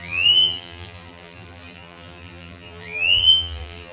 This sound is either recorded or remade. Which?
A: remade